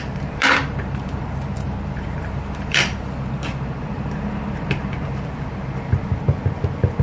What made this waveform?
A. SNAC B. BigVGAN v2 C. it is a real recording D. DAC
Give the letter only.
B